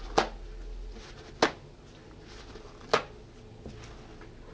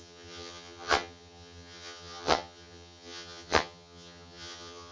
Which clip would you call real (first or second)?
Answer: first